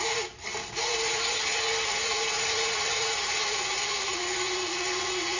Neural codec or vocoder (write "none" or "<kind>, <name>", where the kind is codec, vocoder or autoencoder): none